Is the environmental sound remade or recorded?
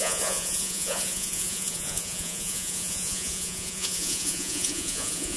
remade